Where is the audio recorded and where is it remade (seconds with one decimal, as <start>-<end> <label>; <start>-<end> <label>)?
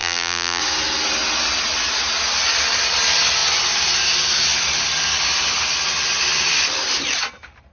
0.0-0.6 remade; 0.6-7.7 recorded